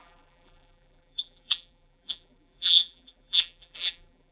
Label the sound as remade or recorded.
remade